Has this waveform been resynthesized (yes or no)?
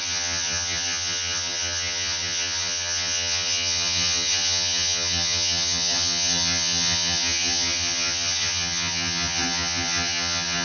yes